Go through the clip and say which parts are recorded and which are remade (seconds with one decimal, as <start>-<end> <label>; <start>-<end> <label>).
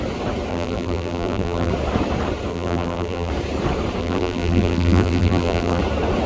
0.0-0.5 recorded; 0.5-1.7 remade; 1.7-2.5 recorded; 2.5-3.3 remade; 3.3-4.0 recorded; 4.0-5.8 remade; 5.8-6.3 recorded